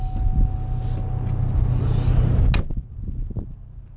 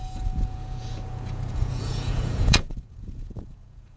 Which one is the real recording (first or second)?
first